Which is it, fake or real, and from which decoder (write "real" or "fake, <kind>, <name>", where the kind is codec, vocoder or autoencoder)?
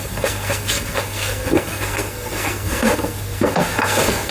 fake, codec, SNAC